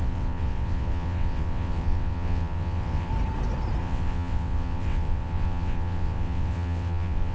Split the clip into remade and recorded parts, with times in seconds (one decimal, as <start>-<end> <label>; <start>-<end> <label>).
0.0-3.1 remade; 3.1-3.8 recorded; 3.8-7.3 remade